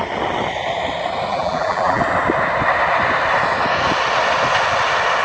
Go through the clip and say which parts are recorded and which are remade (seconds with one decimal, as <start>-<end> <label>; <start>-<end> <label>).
0.0-1.3 recorded; 1.3-2.0 remade; 2.0-5.2 recorded